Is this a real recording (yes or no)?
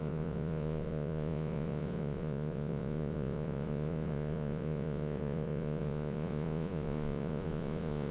no